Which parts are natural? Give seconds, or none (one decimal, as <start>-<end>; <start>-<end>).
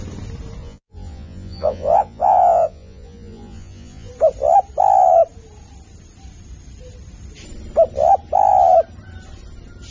0.0-0.6; 4.1-9.9